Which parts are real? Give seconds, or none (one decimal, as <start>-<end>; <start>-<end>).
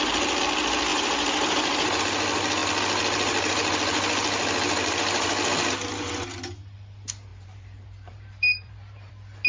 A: 0.0-0.9; 2.0-7.3; 9.1-9.5